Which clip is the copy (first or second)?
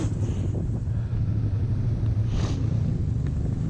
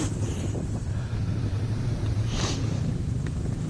second